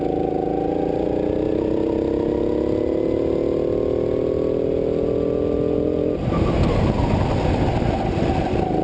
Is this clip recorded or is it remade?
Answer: recorded